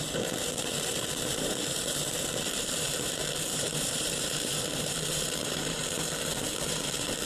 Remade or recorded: remade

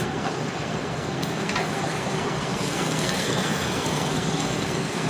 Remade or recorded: remade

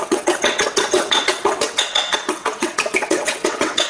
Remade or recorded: remade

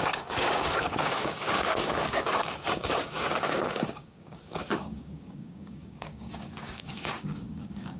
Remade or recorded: remade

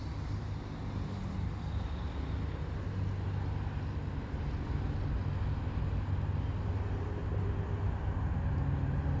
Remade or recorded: recorded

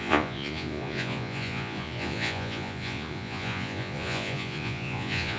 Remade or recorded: remade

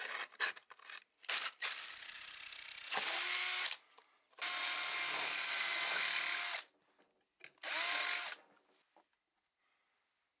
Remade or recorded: recorded